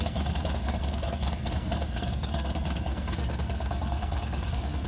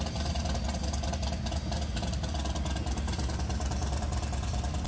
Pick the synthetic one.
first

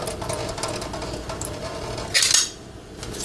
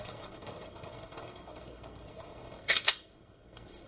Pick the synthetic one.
second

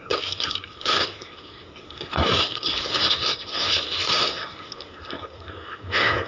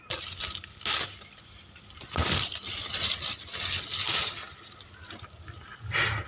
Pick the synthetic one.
first